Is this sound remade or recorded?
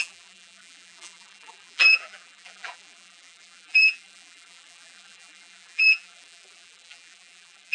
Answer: remade